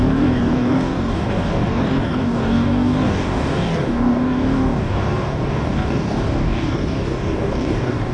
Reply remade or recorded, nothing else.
remade